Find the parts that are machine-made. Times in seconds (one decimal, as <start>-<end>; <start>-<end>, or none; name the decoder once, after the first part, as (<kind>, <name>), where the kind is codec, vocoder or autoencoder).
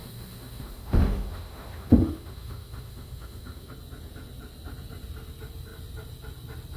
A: 0.0-3.7 (autoencoder, DAC-VAE)